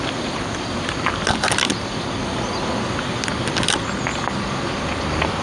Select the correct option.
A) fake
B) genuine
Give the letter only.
B